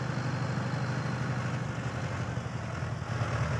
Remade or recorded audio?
recorded